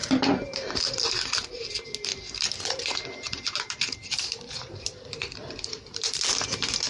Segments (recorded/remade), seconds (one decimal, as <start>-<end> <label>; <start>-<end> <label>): 0.0-0.7 remade; 0.7-2.1 recorded; 2.1-6.2 remade; 6.2-6.9 recorded